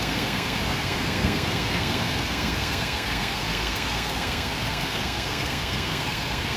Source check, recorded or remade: remade